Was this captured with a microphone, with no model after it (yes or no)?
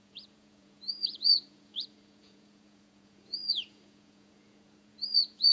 no